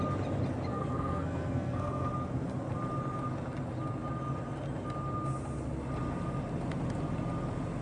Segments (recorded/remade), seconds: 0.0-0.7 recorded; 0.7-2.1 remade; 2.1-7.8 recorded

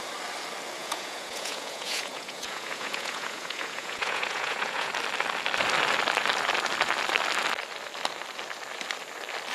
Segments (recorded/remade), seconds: 0.0-0.8 recorded; 0.8-4.9 remade; 4.9-9.5 recorded

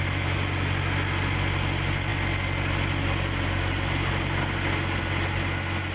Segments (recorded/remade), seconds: 0.0-5.9 recorded

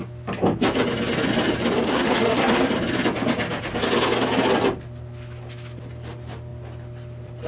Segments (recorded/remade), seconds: 0.0-1.9 recorded; 1.9-2.7 remade; 2.7-7.5 recorded

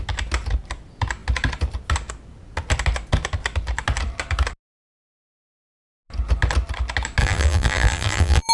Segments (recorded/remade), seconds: 0.0-7.2 recorded; 7.2-8.5 remade

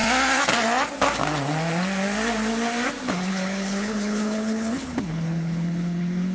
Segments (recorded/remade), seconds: 0.0-3.1 recorded; 3.1-6.3 remade